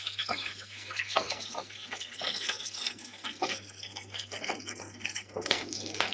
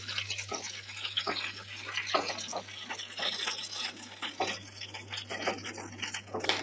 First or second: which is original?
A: second